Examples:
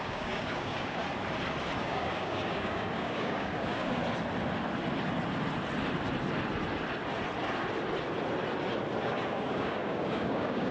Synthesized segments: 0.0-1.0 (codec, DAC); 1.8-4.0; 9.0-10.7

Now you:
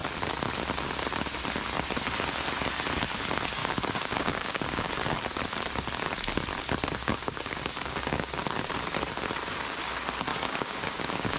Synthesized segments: 3.6-4.9 (codec, DAC); 7.0-8.3; 10.3-11.4

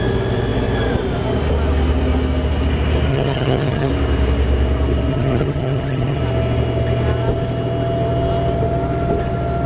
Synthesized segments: 3.1-3.9 (vocoder, HiFi-GAN); 5.1-6.2

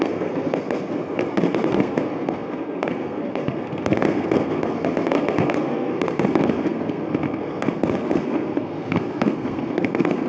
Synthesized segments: 0.0-10.3 (codec, SNAC)